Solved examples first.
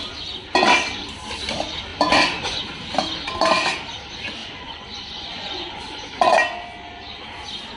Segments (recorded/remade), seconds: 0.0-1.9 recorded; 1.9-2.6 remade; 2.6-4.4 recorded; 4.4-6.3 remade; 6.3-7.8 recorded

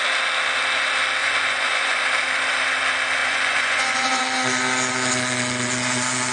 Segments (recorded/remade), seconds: 0.0-1.2 recorded; 1.2-2.0 remade; 2.0-3.2 recorded; 3.2-4.2 remade; 4.2-6.3 recorded

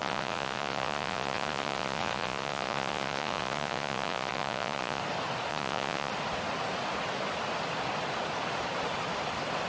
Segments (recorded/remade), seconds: 0.0-5.0 remade; 5.0-5.5 recorded; 5.5-6.1 remade; 6.1-9.7 recorded

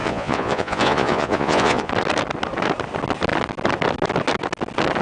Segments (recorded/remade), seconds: 0.0-1.9 remade; 1.9-5.0 recorded

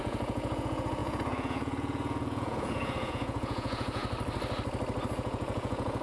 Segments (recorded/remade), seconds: 0.0-4.0 remade; 4.0-5.1 recorded; 5.1-6.0 remade

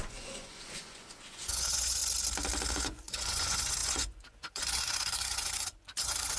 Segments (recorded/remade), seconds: 0.0-2.0 remade; 2.0-2.7 recorded; 2.7-6.4 remade

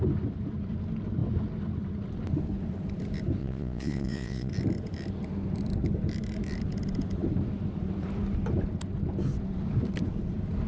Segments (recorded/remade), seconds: 0.0-3.4 recorded; 3.4-4.5 remade; 4.5-10.7 recorded

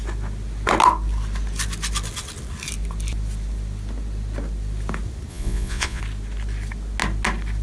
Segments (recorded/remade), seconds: 0.0-5.3 recorded; 5.3-6.0 remade; 6.0-7.6 recorded